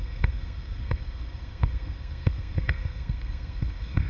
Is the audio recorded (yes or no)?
no